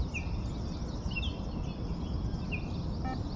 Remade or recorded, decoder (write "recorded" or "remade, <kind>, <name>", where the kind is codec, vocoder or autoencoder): recorded